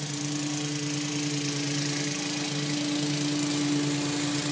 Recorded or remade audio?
recorded